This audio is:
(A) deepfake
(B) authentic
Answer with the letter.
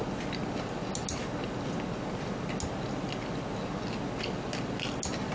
B